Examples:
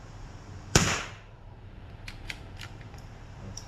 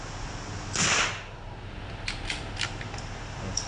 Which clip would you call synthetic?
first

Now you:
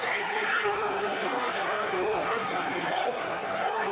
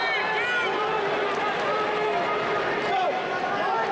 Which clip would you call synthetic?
first